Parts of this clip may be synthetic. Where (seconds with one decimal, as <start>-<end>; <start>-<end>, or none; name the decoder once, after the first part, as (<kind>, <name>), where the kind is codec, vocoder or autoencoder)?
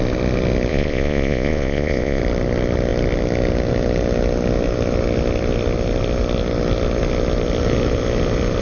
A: 0.7-2.2 (vocoder, Vocos)